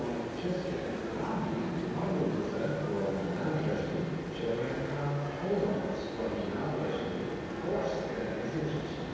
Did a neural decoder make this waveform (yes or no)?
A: no